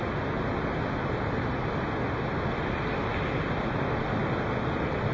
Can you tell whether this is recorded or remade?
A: recorded